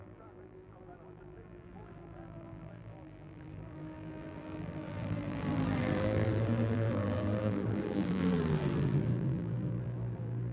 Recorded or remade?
remade